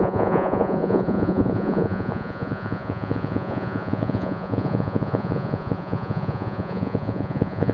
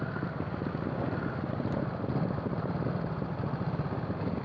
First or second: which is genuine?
second